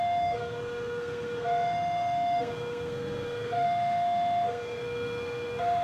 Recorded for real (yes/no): no